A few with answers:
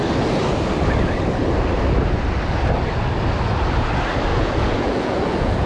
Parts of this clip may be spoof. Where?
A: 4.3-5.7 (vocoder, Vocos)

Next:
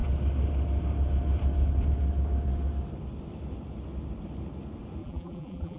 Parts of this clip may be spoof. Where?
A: 5.0-5.8 (vocoder, BigVGAN v2)

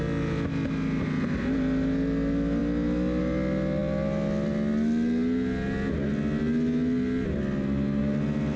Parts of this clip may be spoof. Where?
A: none

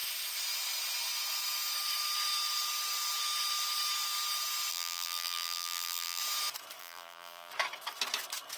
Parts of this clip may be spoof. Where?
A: 4.7-6.2 (vocoder, BigVGAN v2); 6.8-7.5

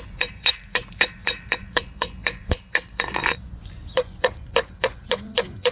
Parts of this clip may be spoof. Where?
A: 0.0-5.7 (vocoder, Vocos)